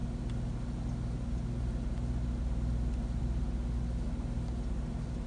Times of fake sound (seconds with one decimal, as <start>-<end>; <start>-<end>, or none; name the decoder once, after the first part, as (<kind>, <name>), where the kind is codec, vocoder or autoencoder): none